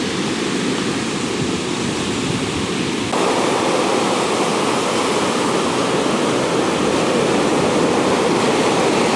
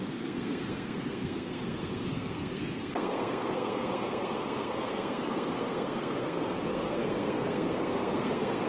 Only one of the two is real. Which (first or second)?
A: first